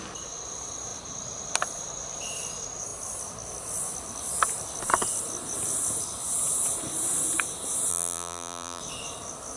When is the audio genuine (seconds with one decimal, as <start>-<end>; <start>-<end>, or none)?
0.0-7.9; 8.8-9.6